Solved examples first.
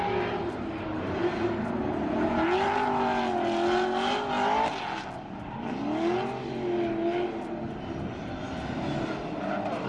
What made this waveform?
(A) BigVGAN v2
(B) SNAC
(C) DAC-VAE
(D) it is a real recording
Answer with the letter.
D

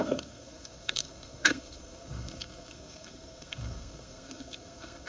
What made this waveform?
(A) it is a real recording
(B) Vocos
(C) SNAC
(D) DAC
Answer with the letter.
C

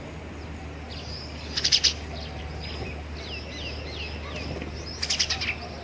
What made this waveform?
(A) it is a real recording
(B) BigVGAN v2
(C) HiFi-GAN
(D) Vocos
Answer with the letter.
A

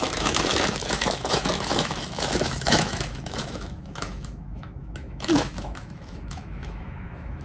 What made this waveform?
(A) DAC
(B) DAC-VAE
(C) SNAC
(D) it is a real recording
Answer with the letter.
B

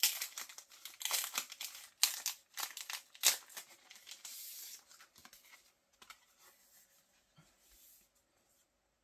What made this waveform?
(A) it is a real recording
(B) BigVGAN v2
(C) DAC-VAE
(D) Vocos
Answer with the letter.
A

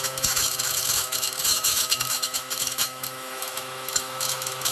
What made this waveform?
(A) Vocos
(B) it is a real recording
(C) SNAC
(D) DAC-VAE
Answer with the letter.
D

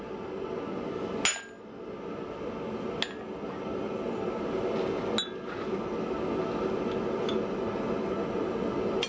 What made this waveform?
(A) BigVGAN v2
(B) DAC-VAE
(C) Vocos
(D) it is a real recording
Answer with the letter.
D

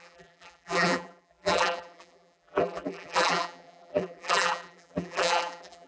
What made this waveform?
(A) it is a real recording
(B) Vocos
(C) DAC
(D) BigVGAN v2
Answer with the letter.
D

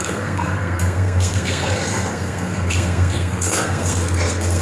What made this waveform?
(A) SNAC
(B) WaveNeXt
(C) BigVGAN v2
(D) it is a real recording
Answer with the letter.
A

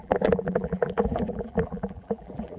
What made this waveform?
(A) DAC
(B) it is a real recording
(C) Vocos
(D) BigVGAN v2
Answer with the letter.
D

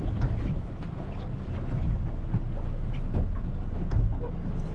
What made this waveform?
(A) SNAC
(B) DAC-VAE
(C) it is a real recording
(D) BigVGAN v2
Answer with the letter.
C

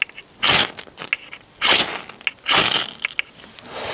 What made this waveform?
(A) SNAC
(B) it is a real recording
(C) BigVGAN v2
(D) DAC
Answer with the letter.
B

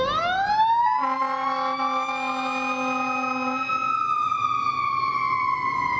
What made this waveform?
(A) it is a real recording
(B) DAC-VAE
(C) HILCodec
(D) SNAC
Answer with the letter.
A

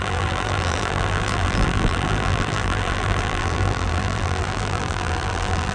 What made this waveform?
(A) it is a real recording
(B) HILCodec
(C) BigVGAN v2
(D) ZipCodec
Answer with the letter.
C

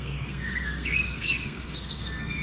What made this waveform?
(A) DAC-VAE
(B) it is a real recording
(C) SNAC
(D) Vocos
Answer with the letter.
C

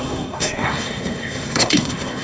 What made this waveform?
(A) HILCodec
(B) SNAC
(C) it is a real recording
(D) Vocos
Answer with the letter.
B